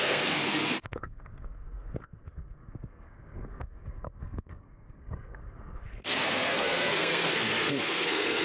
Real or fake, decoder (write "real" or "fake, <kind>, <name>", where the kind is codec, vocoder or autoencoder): fake, codec, SNAC